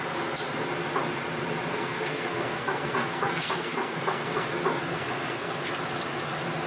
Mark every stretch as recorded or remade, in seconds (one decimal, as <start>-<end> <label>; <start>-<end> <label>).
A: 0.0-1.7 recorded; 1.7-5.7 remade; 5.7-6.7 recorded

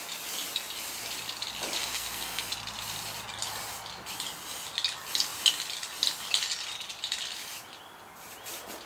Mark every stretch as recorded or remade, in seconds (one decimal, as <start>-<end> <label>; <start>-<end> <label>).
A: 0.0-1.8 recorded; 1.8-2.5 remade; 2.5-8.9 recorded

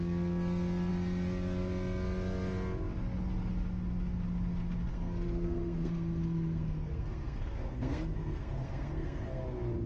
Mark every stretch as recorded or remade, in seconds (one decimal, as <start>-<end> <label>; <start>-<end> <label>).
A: 0.0-4.9 recorded; 4.9-9.4 remade; 9.4-9.9 recorded